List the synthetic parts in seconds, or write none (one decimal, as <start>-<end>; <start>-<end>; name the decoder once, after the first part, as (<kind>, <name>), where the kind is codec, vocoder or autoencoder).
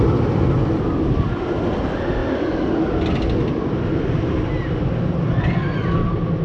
none